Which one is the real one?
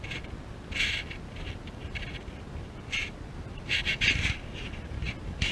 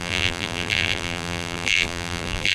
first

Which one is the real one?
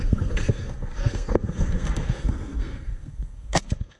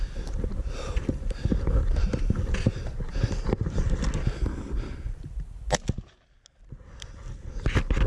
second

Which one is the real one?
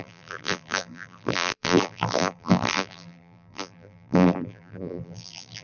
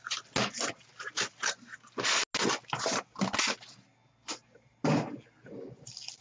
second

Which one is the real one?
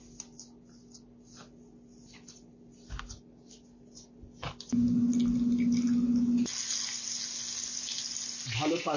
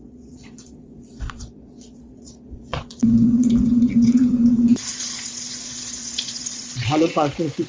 first